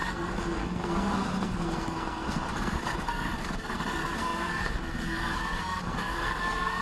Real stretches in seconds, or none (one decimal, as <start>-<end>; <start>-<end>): none